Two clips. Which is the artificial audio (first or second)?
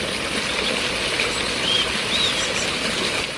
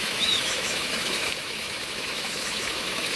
second